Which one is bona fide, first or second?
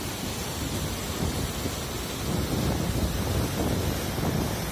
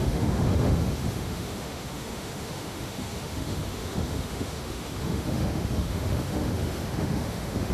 first